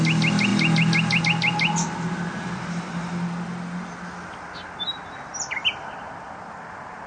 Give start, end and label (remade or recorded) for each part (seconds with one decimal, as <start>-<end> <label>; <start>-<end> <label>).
0.0-7.1 recorded

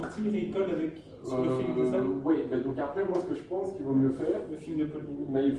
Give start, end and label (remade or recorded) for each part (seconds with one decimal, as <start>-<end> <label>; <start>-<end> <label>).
0.0-5.6 recorded

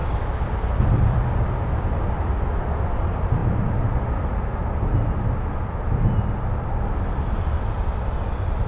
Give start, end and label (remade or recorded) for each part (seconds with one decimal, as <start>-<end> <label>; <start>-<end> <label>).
0.0-8.7 recorded